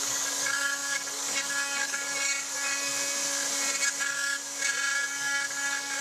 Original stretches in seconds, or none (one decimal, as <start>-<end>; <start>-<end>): 2.9-4.0; 4.4-5.1